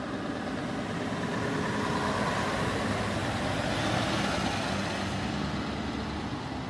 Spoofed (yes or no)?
no